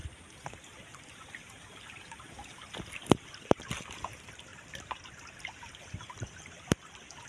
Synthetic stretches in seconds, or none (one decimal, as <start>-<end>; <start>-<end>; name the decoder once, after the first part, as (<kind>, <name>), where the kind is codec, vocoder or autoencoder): 3.6-7.3 (vocoder, BigVGAN v2)